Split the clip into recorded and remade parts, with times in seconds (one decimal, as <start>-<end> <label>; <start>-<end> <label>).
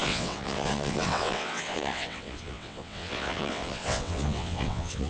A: 0.0-5.1 remade